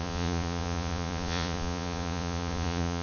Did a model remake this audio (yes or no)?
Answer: yes